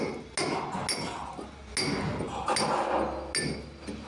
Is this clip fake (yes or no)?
no